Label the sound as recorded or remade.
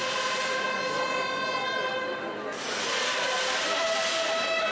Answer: recorded